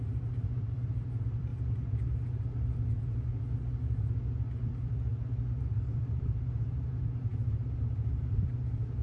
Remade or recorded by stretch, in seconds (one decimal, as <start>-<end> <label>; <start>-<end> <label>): 0.0-1.5 remade; 1.5-2.9 recorded; 2.9-3.3 remade; 3.3-5.6 recorded; 5.6-9.0 remade

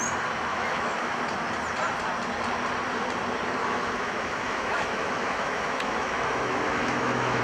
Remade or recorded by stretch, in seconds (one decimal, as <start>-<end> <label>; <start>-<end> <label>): 0.0-0.5 recorded; 0.5-1.2 remade; 1.2-3.6 recorded; 3.6-7.4 remade

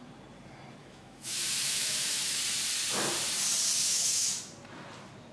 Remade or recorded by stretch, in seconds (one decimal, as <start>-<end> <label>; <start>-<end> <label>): 0.0-0.8 recorded; 0.8-2.4 remade; 2.4-3.9 recorded; 3.9-4.4 remade; 4.4-5.3 recorded

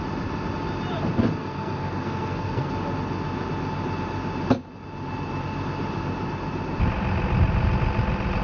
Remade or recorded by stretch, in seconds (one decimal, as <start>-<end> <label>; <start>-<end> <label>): 0.0-1.4 recorded; 1.4-2.7 remade; 2.7-8.4 recorded

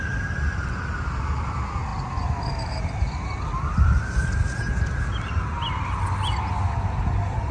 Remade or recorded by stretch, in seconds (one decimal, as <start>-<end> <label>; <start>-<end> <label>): 0.0-7.5 recorded

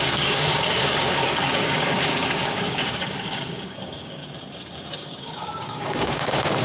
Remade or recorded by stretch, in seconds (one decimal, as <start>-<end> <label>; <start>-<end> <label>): 0.0-4.2 remade; 4.2-4.9 recorded; 4.9-6.6 remade

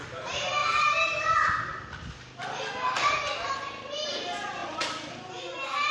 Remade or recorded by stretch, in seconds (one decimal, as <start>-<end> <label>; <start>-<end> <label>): 0.0-5.9 recorded